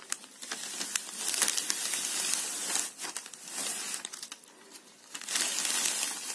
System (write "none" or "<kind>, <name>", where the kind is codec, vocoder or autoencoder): none